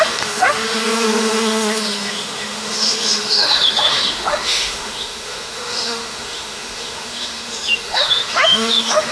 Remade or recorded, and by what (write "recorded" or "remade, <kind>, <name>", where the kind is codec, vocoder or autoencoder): remade, autoencoder, DAC-VAE